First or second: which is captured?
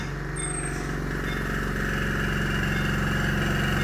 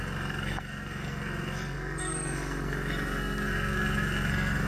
first